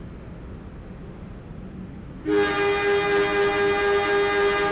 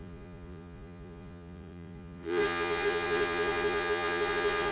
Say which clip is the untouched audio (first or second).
first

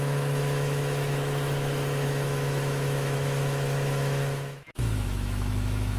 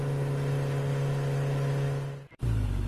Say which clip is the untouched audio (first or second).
second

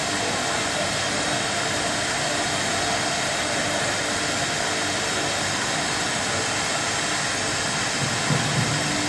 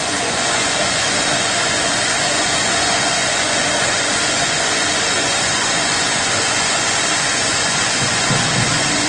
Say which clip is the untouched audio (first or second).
first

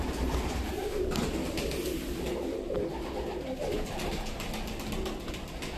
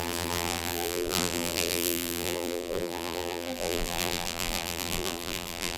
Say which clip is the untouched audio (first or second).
first